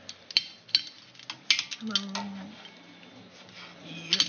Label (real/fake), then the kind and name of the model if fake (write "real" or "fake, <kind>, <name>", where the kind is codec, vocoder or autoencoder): real